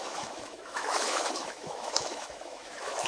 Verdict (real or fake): fake